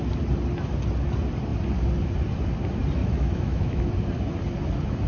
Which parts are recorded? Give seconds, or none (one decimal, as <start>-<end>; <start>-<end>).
0.0-3.0; 3.8-5.1

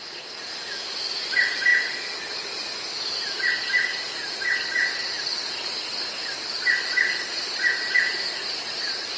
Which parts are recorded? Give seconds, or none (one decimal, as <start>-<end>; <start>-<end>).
0.0-9.2

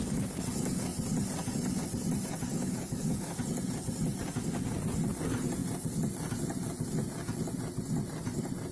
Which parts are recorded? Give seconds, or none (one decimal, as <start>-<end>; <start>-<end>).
0.0-2.5; 3.3-8.7

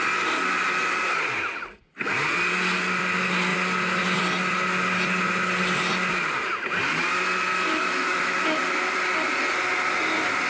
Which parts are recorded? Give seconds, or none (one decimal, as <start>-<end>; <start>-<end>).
0.0-7.5; 8.6-10.5

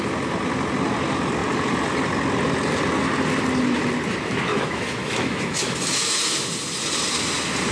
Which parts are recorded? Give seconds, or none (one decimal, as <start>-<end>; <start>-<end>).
0.0-4.5; 6.2-7.7

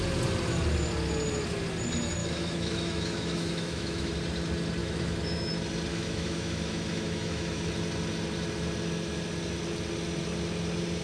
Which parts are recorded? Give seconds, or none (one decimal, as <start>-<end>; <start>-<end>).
0.0-2.2; 4.1-4.8; 5.5-5.9; 7.7-11.0

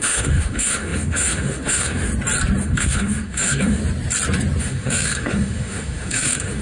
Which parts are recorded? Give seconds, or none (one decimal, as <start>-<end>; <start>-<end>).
2.1-2.6; 3.8-4.6